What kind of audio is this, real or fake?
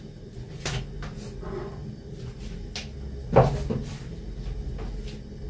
real